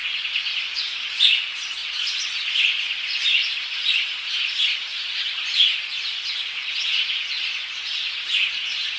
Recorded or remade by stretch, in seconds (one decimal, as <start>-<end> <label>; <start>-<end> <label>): 0.0-0.5 recorded; 0.5-1.8 remade; 1.8-3.2 recorded; 3.2-9.0 remade